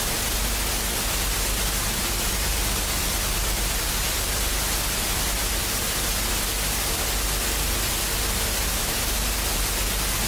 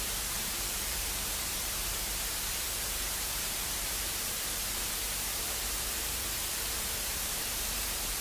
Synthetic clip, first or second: second